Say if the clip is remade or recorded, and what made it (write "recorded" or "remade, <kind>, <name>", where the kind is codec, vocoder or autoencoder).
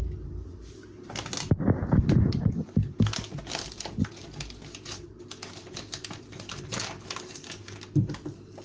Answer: recorded